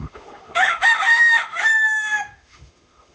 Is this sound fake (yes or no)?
yes